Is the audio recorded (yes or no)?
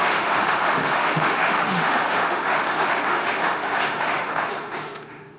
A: no